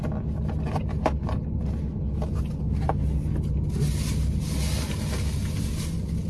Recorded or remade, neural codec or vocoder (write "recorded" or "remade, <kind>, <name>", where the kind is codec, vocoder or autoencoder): recorded